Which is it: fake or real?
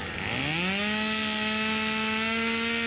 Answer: real